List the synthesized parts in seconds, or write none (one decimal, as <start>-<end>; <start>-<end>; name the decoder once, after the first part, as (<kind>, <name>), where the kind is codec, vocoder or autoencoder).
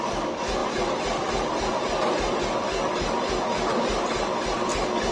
none